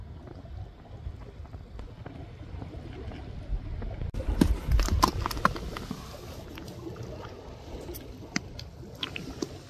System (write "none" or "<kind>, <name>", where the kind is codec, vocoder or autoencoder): none